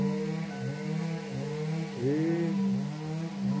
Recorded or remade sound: recorded